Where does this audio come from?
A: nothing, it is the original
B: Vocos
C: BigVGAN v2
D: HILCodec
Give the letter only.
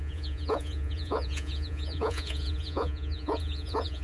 B